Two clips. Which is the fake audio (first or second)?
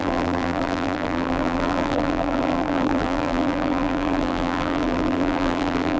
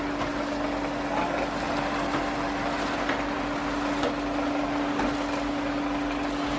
first